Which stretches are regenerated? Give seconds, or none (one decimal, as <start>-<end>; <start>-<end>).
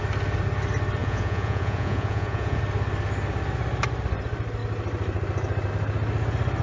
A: 1.0-2.6